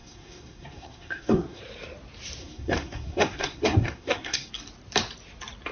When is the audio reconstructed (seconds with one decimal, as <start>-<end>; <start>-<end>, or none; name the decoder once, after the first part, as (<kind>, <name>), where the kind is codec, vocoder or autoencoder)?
0.0-1.6 (codec, SNAC); 2.4-4.5

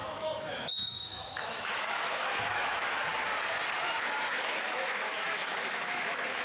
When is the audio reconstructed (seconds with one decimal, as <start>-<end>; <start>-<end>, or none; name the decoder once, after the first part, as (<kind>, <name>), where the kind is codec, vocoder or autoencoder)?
0.0-3.1 (autoencoder, DAC-VAE); 4.3-6.4

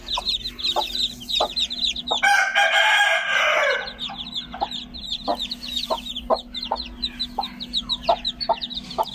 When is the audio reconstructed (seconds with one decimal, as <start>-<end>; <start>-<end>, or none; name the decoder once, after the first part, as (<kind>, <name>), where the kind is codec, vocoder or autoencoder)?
none

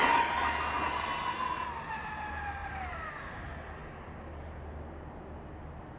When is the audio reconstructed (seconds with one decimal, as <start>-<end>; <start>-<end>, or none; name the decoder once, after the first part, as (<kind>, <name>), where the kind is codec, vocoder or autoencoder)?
none

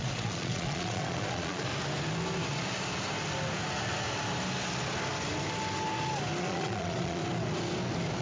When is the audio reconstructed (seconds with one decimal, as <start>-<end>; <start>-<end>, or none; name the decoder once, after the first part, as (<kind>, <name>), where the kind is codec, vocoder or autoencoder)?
0.0-1.7 (vocoder, Vocos); 6.4-7.2